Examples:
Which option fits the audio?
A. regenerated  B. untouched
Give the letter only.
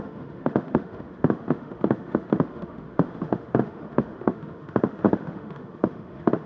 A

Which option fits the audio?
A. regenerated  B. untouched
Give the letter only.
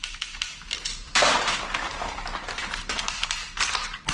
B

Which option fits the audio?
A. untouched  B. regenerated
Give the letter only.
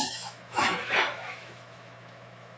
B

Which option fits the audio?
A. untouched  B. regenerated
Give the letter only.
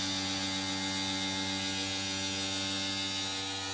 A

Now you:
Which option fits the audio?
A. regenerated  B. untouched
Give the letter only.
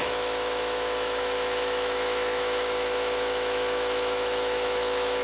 A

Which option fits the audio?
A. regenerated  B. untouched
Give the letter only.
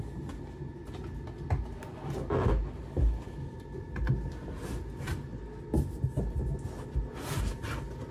B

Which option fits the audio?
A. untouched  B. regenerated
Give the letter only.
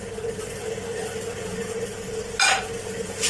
A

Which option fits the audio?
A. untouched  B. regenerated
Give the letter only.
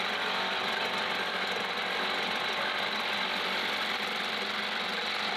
A